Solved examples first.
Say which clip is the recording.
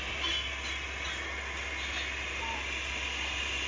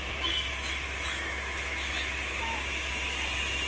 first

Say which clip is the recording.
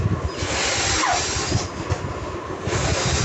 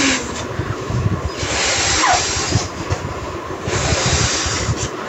first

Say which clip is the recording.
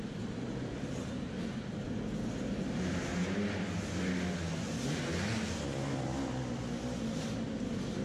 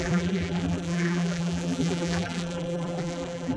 first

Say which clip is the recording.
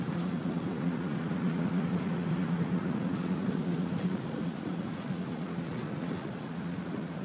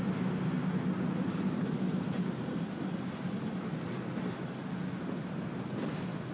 second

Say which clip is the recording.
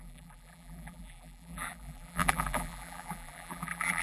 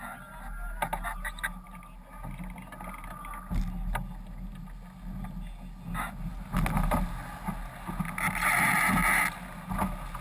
second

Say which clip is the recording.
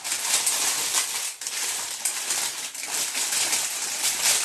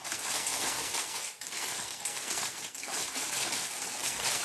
first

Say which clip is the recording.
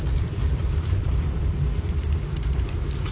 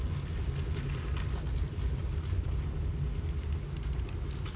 second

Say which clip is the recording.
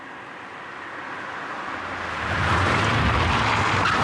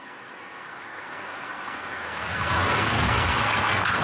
first